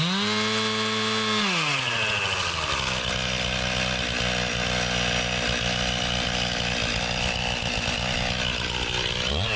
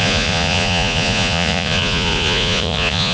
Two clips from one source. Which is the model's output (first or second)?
second